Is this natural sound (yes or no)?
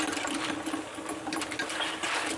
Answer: yes